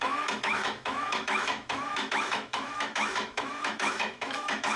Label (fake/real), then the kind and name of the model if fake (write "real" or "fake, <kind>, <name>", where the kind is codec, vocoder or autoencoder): fake, autoencoder, DAC-VAE